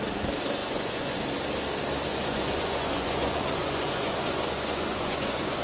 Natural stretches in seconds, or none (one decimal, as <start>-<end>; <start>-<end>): 0.0-0.6; 1.2-2.1